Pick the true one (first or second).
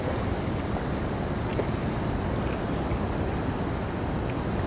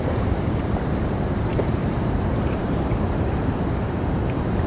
first